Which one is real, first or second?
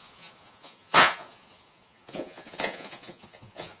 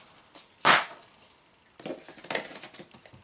second